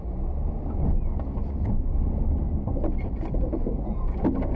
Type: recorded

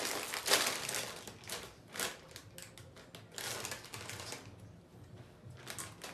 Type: recorded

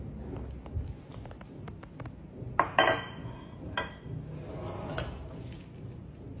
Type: recorded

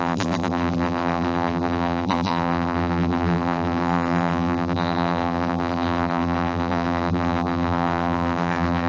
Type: remade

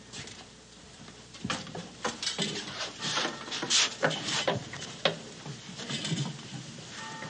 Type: remade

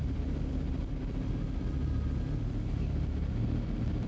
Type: recorded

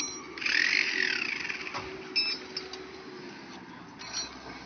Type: recorded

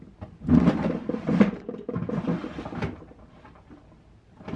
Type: recorded